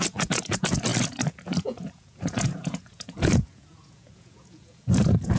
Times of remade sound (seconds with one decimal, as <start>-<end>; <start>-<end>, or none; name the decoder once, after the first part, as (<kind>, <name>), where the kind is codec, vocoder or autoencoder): 0.0-5.4 (vocoder, Vocos)